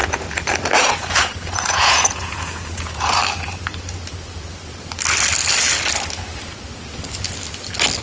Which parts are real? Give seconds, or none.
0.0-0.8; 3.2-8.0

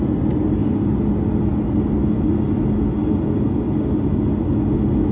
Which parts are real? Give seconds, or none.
0.0-5.1

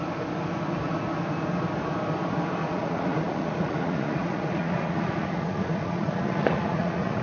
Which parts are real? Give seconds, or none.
0.0-2.6

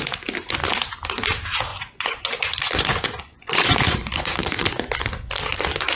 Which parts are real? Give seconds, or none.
0.0-1.7; 5.3-6.0

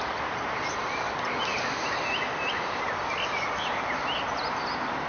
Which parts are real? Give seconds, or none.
0.0-5.1

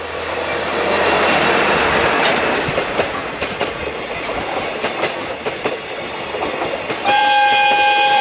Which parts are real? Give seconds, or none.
0.0-3.1; 4.4-8.2